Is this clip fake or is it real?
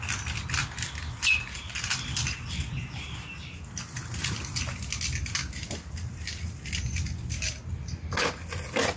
real